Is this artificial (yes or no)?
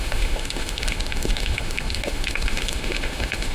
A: yes